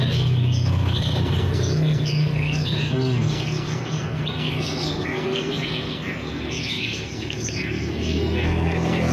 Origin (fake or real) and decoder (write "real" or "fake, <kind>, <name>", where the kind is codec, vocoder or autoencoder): fake, codec, SNAC